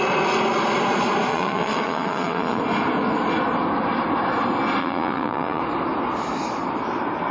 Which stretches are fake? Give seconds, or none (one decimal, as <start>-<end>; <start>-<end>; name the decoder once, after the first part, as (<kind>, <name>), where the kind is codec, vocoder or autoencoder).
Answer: 1.3-2.6 (vocoder, Vocos); 4.8-5.6